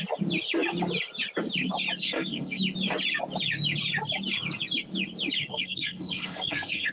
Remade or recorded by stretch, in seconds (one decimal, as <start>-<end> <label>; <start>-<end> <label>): 0.0-2.0 recorded; 2.0-2.6 remade; 2.6-5.5 recorded; 5.5-6.9 remade

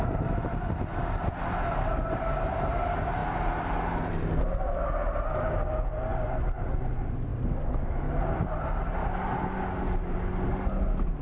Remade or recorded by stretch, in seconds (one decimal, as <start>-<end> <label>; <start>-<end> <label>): 0.0-11.2 recorded

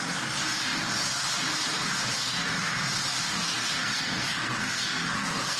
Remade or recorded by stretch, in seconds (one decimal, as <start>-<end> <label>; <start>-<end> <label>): 0.0-3.8 recorded; 3.8-5.6 remade

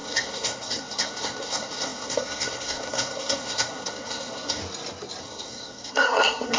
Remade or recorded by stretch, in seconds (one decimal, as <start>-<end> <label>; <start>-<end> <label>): 0.0-4.6 remade; 4.6-5.2 recorded; 5.2-6.6 remade

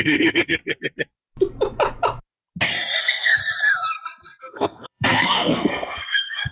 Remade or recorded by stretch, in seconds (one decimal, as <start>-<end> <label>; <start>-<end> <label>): 0.0-0.6 remade; 0.6-3.0 recorded; 3.0-3.4 remade; 3.4-4.4 recorded; 4.4-6.5 remade

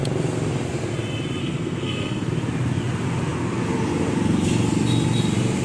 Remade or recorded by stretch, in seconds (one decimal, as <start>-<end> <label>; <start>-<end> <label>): 0.0-1.4 recorded; 1.4-2.3 remade; 2.3-5.6 recorded

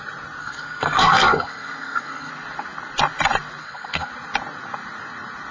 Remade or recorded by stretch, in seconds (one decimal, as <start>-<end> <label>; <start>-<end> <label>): 0.0-0.4 recorded; 0.4-2.3 remade; 2.3-3.6 recorded; 3.6-4.1 remade; 4.1-5.5 recorded